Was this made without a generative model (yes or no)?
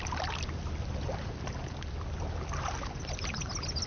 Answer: yes